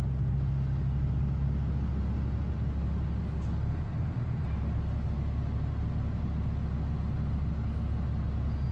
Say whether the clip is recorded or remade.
recorded